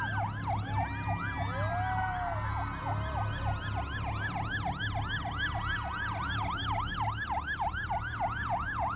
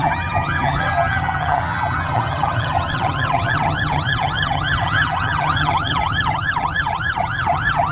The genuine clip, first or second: first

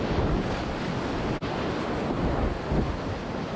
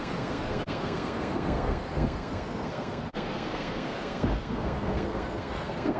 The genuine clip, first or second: first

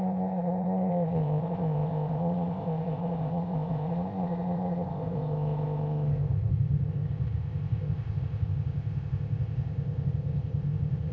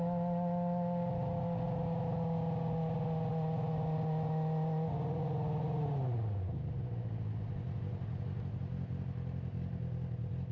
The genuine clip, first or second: second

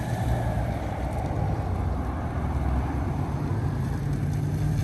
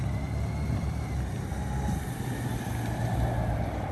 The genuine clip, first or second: second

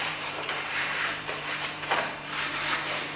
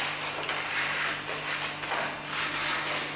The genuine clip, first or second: second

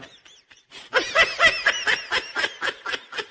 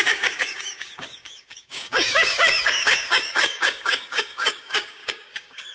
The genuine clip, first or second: first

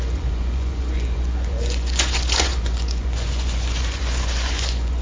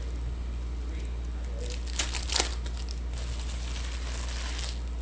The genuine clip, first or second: second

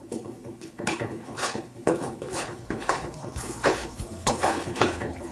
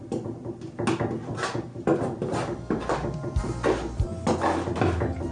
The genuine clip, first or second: second